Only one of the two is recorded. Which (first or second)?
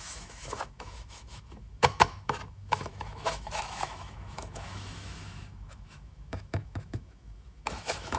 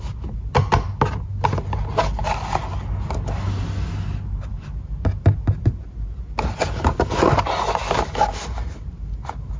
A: second